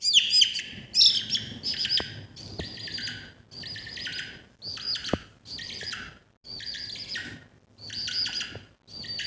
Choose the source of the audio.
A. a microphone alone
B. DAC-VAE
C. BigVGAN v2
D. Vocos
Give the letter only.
A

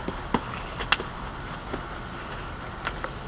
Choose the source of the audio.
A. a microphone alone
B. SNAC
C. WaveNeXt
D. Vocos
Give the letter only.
A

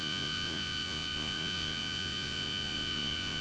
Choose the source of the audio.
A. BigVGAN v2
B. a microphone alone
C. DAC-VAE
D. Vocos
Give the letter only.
D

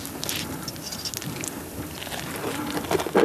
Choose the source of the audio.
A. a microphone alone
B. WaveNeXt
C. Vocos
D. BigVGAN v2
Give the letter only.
A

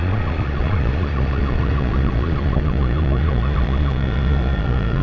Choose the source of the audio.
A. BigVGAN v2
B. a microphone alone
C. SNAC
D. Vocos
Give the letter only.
D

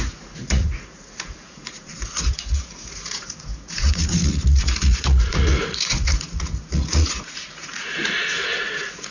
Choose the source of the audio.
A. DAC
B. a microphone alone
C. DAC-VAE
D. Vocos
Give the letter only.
D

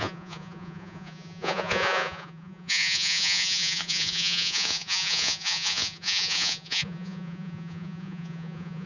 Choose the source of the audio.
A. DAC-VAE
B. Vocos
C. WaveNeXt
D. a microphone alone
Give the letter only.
B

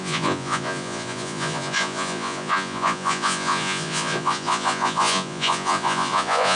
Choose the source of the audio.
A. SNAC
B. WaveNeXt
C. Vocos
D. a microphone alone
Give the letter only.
C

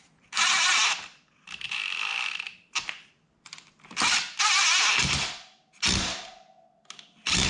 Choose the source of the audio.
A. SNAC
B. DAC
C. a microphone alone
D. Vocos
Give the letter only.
C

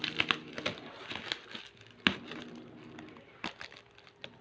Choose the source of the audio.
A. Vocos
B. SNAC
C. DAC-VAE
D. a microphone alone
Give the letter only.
D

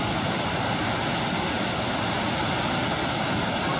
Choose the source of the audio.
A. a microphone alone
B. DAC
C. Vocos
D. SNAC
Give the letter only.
A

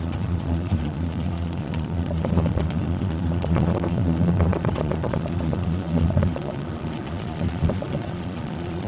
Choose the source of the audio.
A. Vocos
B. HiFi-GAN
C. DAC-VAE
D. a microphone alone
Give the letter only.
A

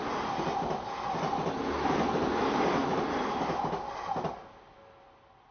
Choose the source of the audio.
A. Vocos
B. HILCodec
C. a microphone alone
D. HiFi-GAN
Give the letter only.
C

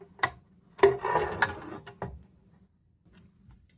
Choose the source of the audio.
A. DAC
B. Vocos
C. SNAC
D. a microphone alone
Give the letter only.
D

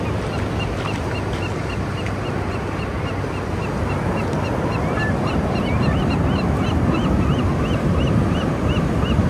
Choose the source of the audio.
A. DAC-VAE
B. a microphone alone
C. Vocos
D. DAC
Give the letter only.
B